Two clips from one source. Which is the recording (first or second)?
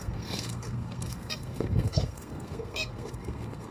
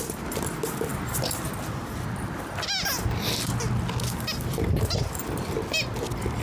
second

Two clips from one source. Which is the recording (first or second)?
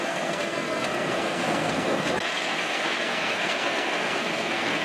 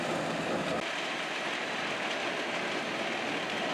second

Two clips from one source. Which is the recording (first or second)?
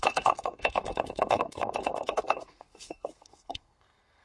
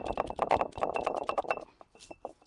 second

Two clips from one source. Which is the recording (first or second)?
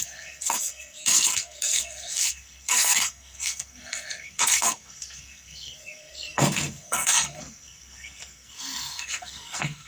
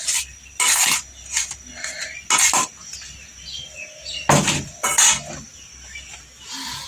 second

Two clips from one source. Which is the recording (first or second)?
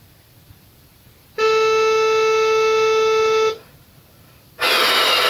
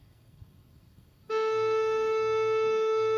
first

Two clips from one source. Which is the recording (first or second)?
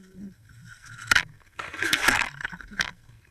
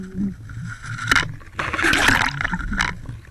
second